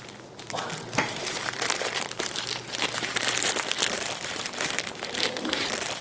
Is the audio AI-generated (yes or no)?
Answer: yes